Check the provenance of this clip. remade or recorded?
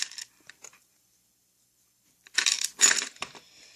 remade